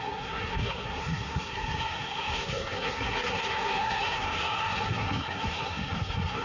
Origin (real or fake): fake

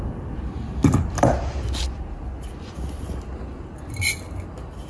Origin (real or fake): real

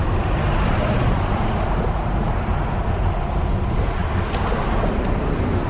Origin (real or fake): real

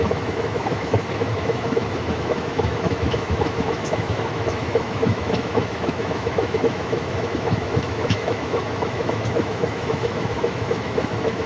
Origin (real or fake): fake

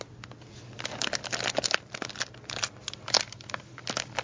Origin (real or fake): real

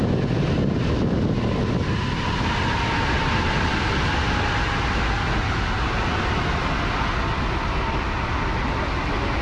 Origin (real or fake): real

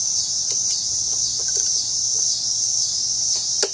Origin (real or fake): real